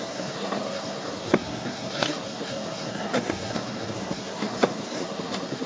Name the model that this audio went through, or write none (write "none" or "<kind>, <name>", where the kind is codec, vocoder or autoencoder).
codec, SNAC